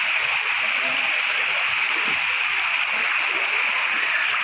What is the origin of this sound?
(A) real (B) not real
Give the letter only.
A